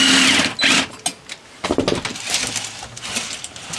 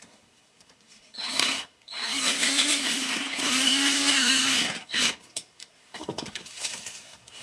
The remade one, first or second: second